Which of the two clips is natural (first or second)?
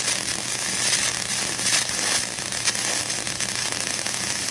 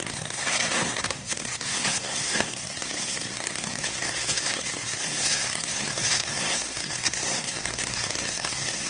first